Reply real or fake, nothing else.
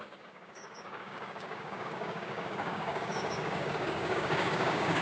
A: fake